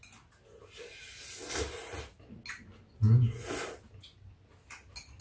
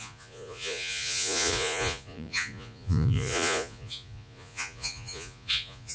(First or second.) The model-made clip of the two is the second